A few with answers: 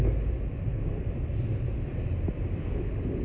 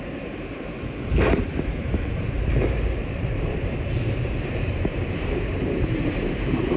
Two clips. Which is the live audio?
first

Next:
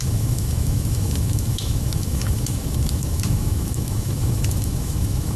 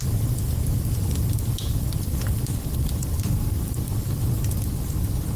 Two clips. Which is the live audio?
second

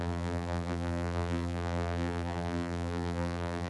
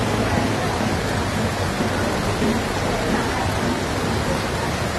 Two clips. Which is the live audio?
second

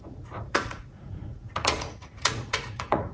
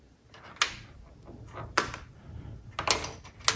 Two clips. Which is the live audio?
second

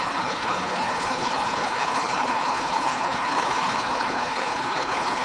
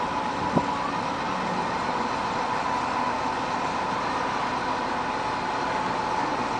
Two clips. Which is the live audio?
second